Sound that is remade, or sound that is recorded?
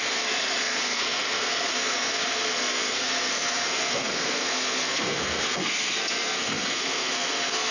remade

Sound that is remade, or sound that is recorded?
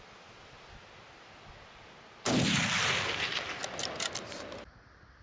recorded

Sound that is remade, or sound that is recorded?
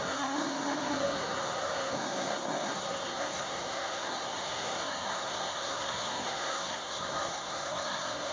remade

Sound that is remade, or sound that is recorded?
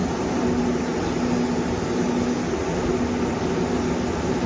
recorded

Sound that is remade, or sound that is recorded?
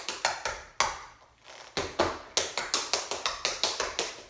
recorded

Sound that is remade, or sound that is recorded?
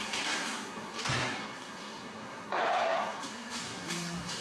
remade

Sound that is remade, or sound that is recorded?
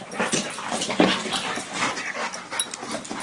recorded